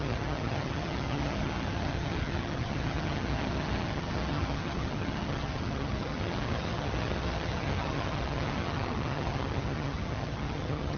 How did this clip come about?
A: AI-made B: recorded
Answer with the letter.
A